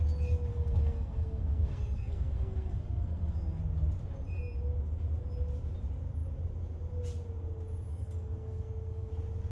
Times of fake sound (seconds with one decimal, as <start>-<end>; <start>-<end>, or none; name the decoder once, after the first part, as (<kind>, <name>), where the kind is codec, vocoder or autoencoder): 0.5-3.6 (codec, SNAC); 7.9-9.1